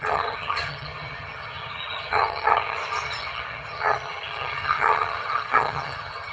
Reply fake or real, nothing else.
fake